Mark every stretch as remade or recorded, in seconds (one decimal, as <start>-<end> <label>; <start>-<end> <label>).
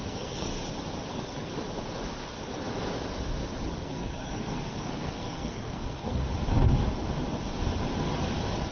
0.0-0.5 remade; 0.5-1.1 recorded; 1.1-1.5 remade; 1.5-3.8 recorded; 3.8-6.2 remade; 6.2-8.7 recorded